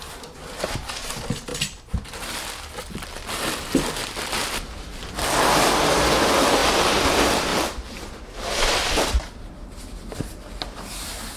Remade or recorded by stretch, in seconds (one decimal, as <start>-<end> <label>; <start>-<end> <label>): 0.0-4.0 recorded; 4.0-5.1 remade; 5.1-7.5 recorded; 7.5-9.5 remade; 9.5-11.4 recorded